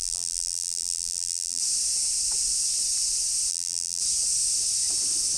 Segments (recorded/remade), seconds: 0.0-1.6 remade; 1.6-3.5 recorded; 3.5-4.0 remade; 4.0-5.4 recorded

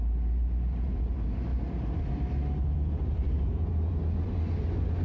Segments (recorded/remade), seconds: 0.0-1.5 recorded; 1.5-4.5 remade; 4.5-5.0 recorded